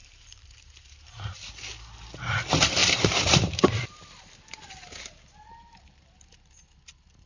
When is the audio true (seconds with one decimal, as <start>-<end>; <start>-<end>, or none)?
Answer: 1.3-2.8; 3.5-7.3